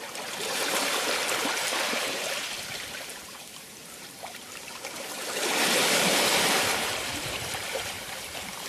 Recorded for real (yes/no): no